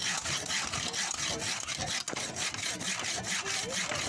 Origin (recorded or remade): recorded